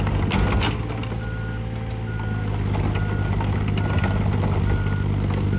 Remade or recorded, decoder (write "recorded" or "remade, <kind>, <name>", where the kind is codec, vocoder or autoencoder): recorded